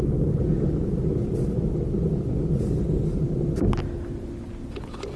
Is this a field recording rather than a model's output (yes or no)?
yes